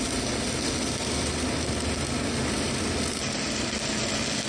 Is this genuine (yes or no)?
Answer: yes